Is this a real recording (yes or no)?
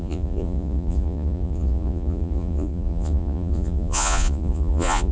no